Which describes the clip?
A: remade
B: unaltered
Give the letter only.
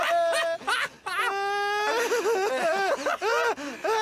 B